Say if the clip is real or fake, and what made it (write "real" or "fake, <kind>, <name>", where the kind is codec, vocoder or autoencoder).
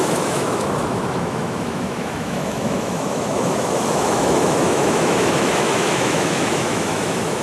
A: fake, autoencoder, DAC-VAE